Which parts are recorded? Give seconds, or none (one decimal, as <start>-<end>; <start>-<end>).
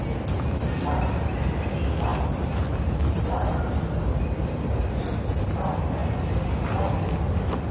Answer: 0.0-7.7